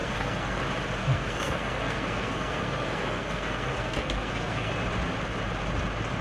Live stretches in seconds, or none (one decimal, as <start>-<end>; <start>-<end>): 0.6-1.0; 4.7-6.2